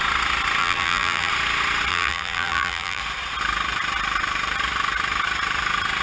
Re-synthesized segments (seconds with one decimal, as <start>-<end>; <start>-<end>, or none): 0.6-1.3; 1.9-3.0